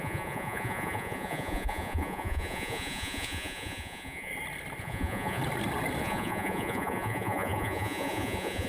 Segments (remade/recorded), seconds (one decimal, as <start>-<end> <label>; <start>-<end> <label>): 0.0-4.3 remade; 4.3-4.8 recorded; 4.8-5.4 remade; 5.4-6.0 recorded; 6.0-8.7 remade